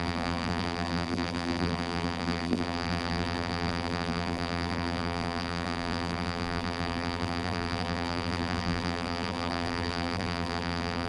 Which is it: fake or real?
fake